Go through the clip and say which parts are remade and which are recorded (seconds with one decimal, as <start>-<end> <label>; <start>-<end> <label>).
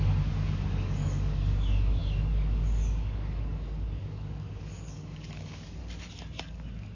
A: 0.0-5.8 remade; 5.8-6.5 recorded; 6.5-7.0 remade